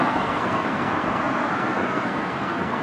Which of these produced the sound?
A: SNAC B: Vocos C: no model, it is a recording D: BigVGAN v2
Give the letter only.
A